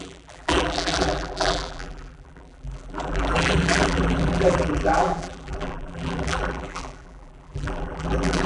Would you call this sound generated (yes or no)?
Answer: yes